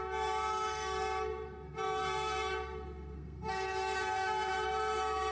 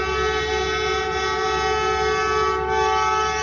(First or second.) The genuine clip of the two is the second